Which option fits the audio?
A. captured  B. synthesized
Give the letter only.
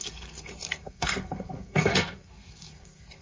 B